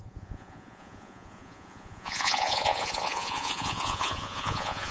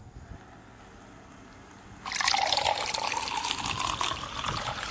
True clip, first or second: second